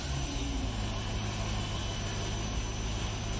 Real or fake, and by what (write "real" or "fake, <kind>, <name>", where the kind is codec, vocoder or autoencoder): real